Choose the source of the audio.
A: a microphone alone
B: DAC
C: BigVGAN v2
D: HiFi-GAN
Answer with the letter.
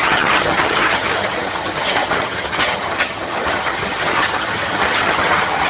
D